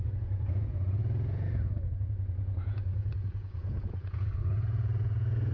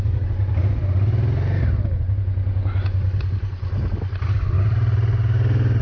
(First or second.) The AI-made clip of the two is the first